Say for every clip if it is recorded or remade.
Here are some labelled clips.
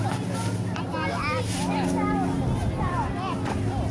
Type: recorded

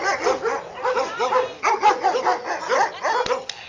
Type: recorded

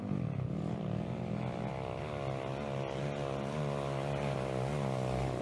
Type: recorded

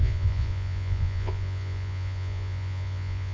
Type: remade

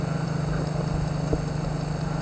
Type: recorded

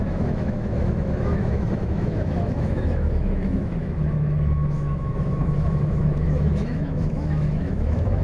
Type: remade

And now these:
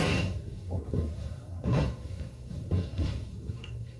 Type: remade